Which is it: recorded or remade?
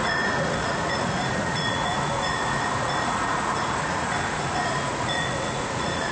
remade